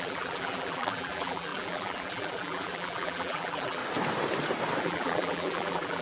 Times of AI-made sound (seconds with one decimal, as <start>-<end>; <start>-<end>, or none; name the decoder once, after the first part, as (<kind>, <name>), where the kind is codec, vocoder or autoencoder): 0.0-3.8 (vocoder, BigVGAN v2); 4.8-6.0